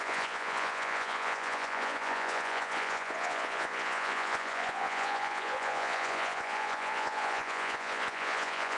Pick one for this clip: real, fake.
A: fake